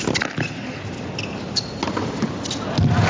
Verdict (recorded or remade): recorded